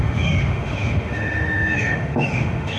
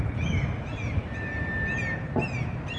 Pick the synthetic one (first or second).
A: first